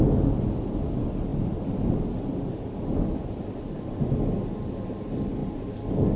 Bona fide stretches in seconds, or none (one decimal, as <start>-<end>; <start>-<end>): 0.0-6.2